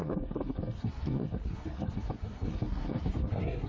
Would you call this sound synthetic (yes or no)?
yes